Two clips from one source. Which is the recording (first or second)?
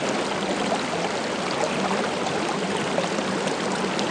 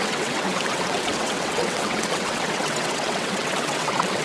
first